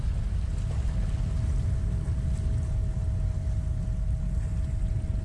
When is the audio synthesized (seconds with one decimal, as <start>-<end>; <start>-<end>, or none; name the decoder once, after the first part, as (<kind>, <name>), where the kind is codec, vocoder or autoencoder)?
none

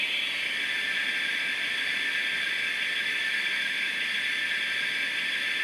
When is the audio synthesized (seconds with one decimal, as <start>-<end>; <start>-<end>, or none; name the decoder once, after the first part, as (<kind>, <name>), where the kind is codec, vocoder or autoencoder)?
3.0-4.1 (autoencoder, DAC-VAE)

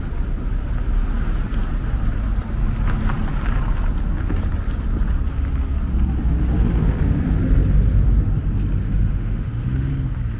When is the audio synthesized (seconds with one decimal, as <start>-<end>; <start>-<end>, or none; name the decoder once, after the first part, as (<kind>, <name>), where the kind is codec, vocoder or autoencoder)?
8.8-9.9 (autoencoder, DAC-VAE)

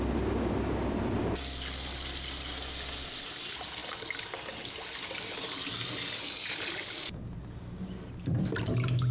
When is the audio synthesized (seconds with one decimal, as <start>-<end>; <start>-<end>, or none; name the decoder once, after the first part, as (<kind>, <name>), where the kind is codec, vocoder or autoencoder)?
none

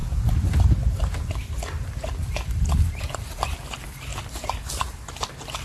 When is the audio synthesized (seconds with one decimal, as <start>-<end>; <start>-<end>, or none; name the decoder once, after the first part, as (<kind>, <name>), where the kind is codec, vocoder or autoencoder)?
none

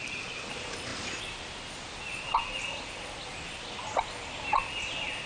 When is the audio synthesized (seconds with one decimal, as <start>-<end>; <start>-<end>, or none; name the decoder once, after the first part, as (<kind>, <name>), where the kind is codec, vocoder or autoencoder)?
none

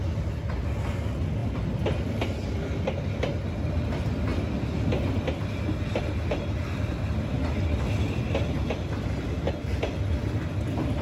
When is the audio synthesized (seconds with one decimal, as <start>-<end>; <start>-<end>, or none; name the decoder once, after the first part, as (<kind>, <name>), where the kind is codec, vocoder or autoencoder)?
none

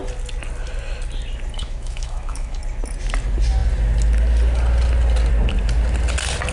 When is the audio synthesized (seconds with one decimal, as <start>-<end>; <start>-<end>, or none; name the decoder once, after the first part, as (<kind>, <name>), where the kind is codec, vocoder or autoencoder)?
1.6-2.6 (autoencoder, DAC-VAE)